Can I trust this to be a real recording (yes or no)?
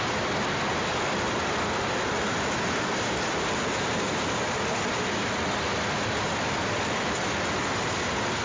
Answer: yes